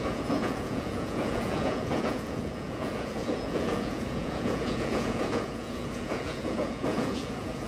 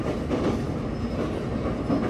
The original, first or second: second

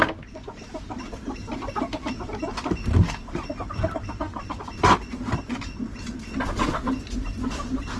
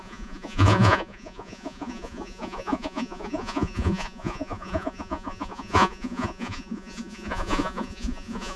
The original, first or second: first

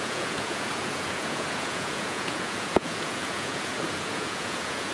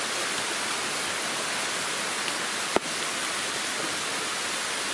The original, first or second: second